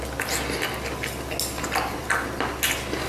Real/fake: real